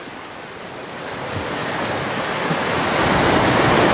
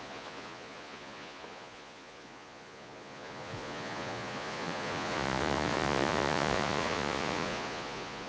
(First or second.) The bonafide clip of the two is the first